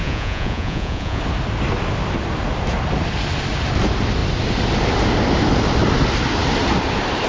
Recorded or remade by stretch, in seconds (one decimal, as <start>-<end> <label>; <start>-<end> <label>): 0.0-1.2 remade; 1.2-7.3 recorded